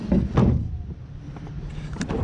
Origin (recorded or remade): recorded